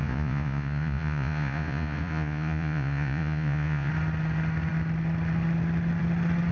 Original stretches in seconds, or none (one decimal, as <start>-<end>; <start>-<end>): 3.9-6.5